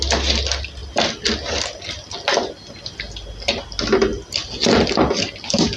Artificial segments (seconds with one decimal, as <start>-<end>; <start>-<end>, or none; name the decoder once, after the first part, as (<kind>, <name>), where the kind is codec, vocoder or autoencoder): none